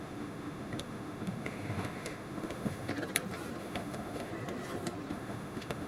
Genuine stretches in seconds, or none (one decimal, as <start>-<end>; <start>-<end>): 2.9-3.6; 4.3-5.1